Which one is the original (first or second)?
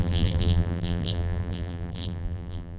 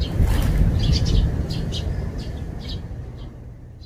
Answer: second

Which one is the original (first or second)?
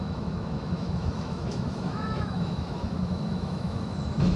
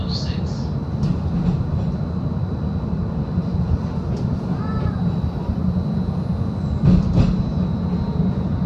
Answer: second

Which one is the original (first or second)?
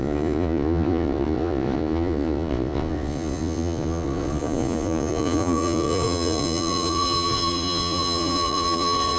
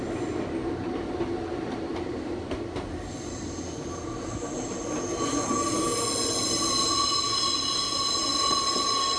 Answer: second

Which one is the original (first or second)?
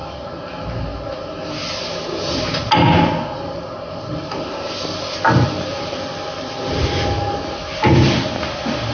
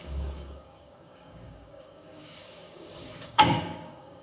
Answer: first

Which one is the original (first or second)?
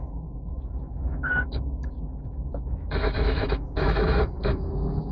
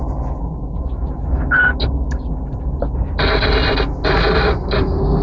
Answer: second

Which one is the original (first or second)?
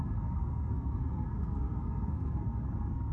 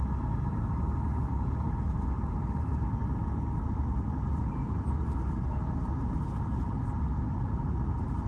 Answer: second